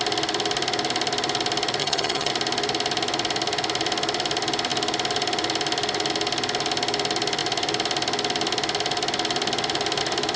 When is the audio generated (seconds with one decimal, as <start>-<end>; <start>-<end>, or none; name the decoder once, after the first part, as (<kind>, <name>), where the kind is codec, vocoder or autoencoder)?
1.8-2.3 (vocoder, HiFi-GAN)